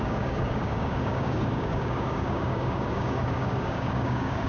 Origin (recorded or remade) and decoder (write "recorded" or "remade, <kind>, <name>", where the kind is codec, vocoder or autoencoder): remade, codec, DAC